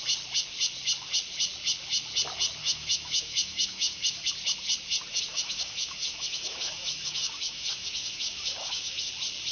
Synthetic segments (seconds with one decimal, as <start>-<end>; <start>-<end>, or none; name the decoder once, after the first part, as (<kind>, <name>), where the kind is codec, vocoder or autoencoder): 2.6-4.3 (autoencoder, DAC-VAE); 5.1-9.1